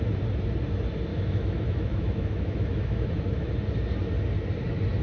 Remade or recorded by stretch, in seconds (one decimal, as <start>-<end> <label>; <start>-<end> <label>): 0.0-1.1 recorded; 1.1-3.5 remade; 3.5-5.0 recorded